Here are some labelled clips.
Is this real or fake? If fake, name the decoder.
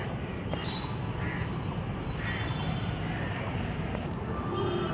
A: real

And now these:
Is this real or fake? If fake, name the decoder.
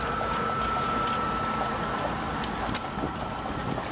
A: real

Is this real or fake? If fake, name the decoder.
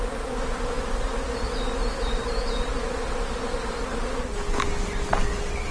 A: real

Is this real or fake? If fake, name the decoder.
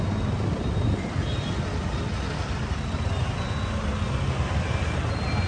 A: real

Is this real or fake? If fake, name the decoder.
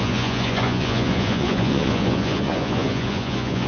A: fake, vocoder, Vocos